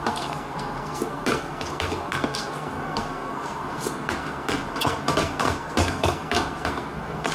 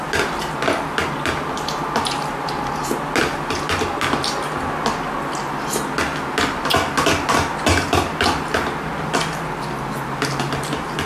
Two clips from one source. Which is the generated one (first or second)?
first